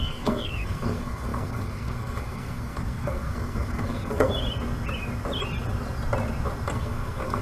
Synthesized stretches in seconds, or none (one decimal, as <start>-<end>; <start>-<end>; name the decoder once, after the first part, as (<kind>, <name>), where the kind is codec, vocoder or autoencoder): 0.0-4.3 (codec, SNAC); 6.7-7.4